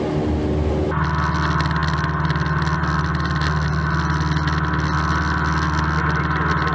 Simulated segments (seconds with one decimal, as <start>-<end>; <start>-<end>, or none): none